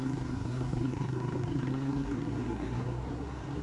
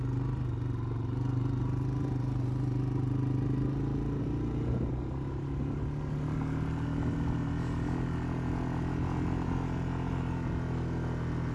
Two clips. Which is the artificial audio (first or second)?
first